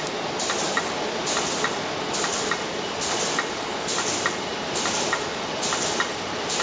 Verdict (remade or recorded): recorded